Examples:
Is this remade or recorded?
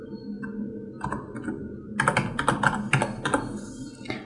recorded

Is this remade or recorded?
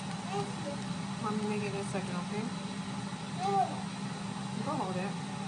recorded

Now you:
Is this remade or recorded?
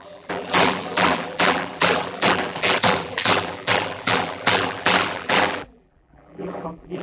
remade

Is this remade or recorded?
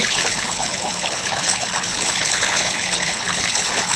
remade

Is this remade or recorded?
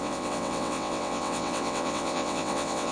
remade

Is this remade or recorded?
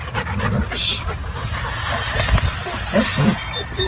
recorded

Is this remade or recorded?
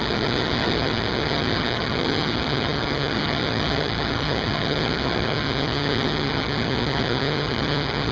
remade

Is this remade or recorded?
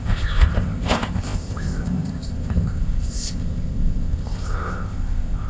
remade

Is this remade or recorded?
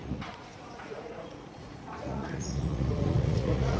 remade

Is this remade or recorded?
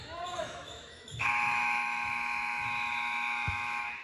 remade